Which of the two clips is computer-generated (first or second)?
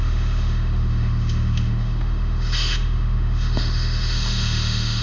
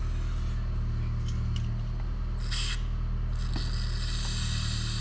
first